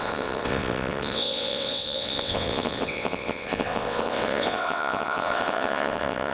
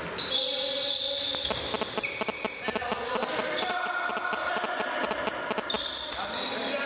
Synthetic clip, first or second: first